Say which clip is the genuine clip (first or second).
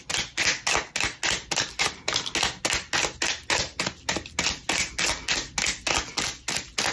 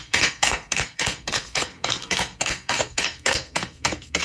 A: first